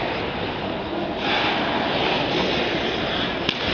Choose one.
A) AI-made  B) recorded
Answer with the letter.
B